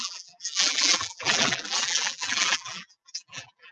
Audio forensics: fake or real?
fake